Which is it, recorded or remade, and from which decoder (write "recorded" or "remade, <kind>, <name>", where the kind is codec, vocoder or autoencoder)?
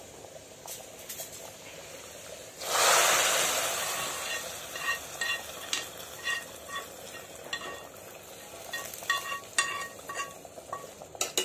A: recorded